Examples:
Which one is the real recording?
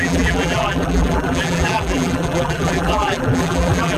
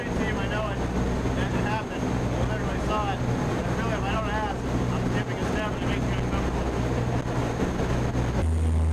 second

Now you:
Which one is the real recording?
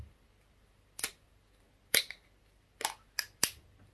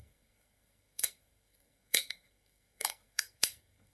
first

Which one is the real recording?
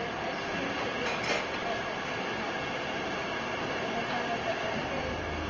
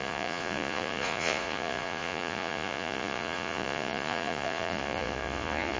first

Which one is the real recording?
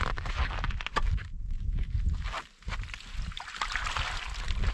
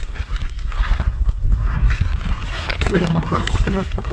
first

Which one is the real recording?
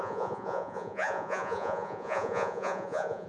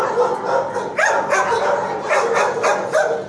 second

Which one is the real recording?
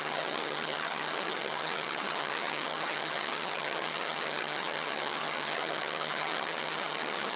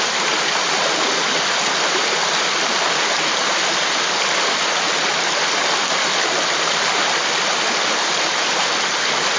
second